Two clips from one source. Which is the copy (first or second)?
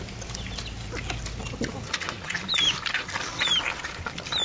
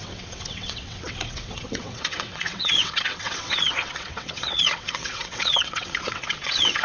second